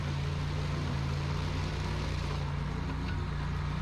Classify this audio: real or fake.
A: real